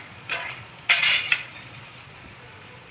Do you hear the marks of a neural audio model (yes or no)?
yes